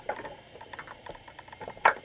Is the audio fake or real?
real